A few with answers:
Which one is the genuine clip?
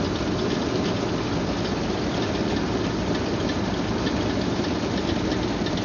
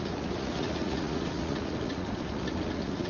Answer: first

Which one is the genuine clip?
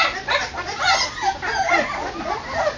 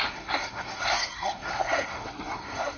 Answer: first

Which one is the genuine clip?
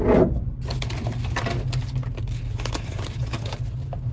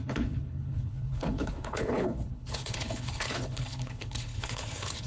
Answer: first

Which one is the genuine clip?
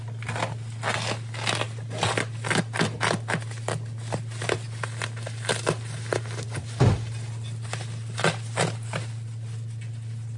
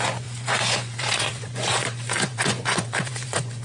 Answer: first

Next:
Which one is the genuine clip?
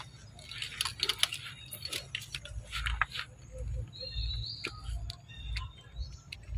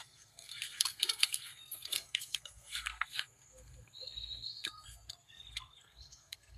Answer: first